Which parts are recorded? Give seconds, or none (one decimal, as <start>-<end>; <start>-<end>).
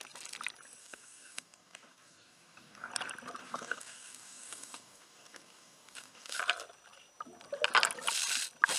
0.0-0.8; 2.9-3.4; 6.4-8.8